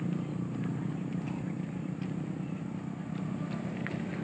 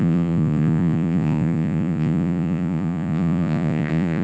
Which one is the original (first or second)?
first